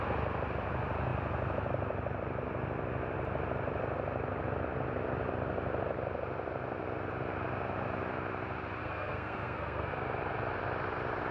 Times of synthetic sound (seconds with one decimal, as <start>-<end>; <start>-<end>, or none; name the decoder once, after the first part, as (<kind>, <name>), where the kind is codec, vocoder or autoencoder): 8.8-9.9 (codec, SNAC)